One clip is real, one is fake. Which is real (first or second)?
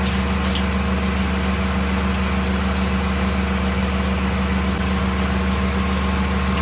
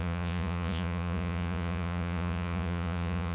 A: first